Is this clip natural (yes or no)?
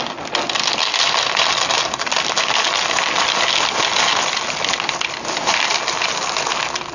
yes